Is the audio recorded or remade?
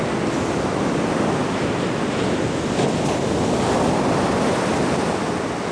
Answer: recorded